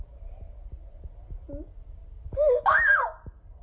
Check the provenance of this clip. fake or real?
real